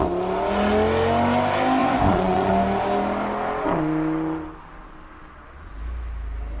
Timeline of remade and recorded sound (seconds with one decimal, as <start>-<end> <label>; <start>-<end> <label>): 0.0-1.8 recorded; 1.8-2.5 remade; 2.5-6.6 recorded